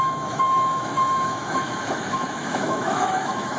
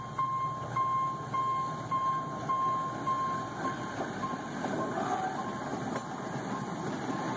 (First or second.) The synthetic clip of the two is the first